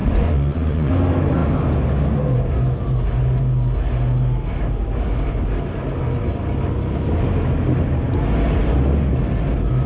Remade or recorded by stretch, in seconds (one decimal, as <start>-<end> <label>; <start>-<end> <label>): 0.0-0.9 remade; 0.9-9.9 recorded